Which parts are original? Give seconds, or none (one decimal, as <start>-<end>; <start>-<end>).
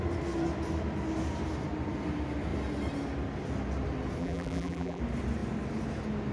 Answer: 0.0-4.2; 5.0-6.3